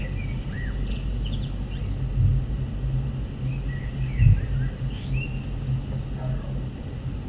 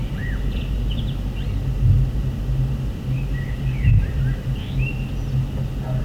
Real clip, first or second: first